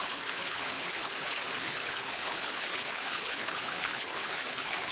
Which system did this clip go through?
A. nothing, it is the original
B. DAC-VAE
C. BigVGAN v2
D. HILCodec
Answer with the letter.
D